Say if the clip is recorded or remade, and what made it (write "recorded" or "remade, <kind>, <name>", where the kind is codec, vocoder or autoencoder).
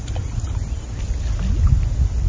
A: recorded